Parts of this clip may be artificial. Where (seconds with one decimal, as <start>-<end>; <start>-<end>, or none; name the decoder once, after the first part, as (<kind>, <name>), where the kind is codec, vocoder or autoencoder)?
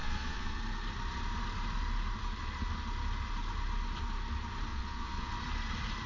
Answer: 0.0-0.6 (vocoder, Vocos); 4.7-5.3